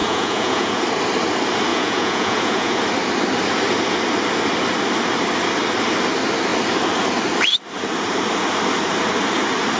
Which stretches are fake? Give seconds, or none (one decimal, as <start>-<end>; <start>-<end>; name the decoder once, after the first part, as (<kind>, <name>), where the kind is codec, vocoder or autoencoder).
0.0-0.8 (vocoder, Vocos); 1.7-2.8